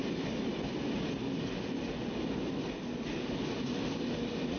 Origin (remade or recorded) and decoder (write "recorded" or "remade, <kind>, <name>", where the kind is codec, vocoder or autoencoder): recorded